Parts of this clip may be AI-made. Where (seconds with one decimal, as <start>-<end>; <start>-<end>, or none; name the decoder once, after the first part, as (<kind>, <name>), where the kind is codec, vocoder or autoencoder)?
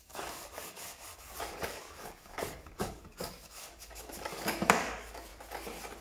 0.0-5.3 (codec, DAC)